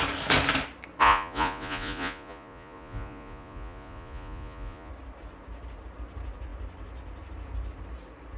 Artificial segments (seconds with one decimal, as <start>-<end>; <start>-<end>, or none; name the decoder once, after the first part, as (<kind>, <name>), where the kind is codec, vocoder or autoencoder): 1.0-4.9 (vocoder, Vocos)